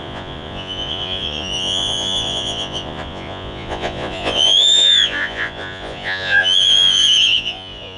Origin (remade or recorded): remade